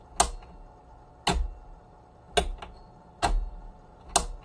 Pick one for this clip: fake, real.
real